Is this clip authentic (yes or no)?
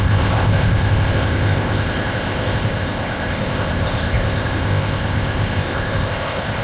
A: no